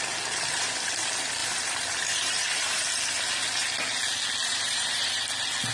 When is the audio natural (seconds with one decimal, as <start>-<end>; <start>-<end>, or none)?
0.0-1.4; 2.8-4.4; 5.2-5.7